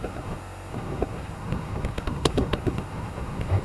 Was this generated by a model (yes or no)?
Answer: yes